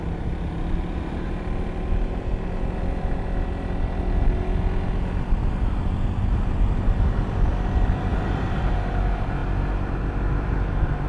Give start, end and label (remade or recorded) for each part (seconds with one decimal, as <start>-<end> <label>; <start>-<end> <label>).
0.0-8.1 recorded; 8.1-8.7 remade; 8.7-11.1 recorded